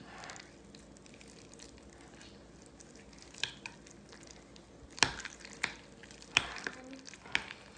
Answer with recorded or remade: recorded